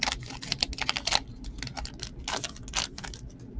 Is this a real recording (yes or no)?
yes